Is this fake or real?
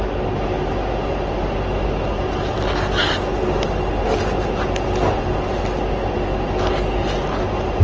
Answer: real